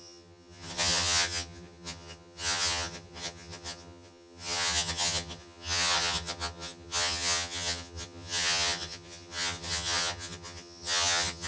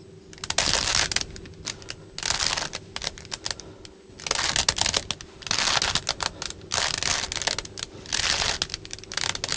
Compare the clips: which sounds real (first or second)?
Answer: second